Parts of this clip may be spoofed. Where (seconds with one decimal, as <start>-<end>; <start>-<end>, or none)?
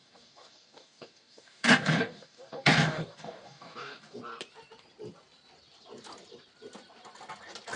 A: 0.0-4.2